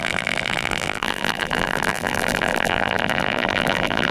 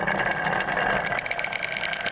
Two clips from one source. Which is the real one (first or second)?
second